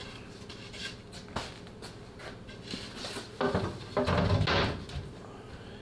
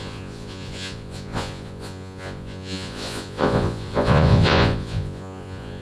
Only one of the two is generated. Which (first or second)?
second